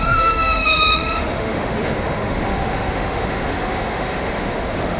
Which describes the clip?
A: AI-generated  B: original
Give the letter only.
A